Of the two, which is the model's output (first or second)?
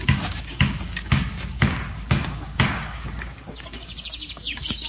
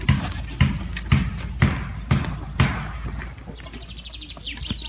first